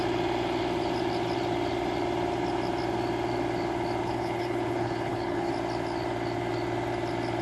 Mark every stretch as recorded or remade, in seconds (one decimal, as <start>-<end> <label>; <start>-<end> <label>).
0.0-4.0 recorded; 4.0-5.5 remade; 5.5-7.4 recorded

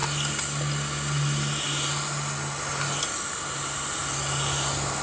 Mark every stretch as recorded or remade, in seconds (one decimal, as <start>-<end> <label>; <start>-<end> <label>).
0.0-5.0 recorded

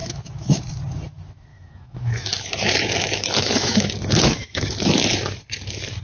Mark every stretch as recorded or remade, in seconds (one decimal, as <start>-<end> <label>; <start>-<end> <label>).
0.0-0.6 remade; 0.6-1.5 recorded; 1.5-5.1 remade; 5.1-6.0 recorded

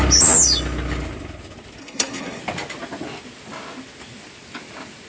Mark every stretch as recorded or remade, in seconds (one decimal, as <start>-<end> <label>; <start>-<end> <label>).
0.0-1.8 recorded; 1.8-2.4 remade; 2.4-5.1 recorded

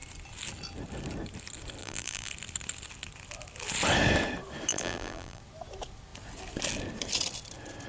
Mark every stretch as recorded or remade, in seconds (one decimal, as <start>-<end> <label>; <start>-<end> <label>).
0.0-1.8 recorded; 1.8-2.3 remade; 2.3-4.7 recorded; 4.7-5.4 remade; 5.4-7.9 recorded

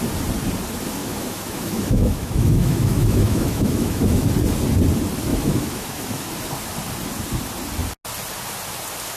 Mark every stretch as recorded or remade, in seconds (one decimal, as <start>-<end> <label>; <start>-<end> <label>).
0.0-1.0 recorded; 1.0-4.3 remade; 4.3-5.3 recorded; 5.3-6.3 remade; 6.3-9.2 recorded

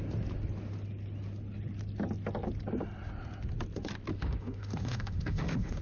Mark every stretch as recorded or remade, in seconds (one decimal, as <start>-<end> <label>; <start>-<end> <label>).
0.0-4.1 recorded; 4.1-5.8 remade

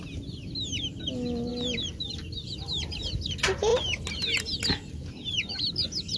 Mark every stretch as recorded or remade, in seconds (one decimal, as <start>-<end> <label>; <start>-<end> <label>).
0.0-1.5 recorded; 1.5-3.0 remade; 3.0-6.2 recorded